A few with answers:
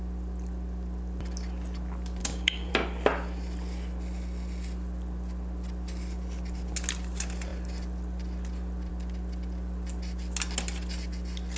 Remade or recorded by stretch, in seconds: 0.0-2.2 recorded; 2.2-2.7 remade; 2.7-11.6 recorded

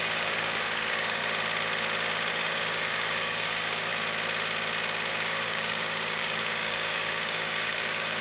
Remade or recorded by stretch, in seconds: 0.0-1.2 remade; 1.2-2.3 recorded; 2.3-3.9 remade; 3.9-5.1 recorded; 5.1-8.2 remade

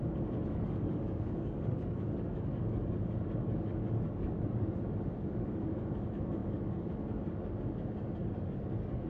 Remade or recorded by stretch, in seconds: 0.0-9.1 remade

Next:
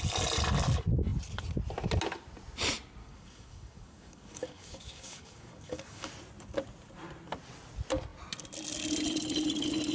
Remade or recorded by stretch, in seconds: 0.0-3.0 recorded; 3.0-6.1 remade; 6.1-9.9 recorded

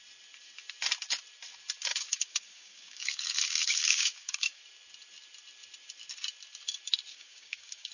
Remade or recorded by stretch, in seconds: 0.0-1.9 recorded; 1.9-4.6 remade; 4.6-7.1 recorded; 7.1-7.9 remade

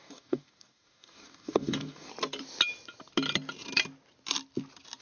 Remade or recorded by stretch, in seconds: 0.0-2.1 remade; 2.1-5.0 recorded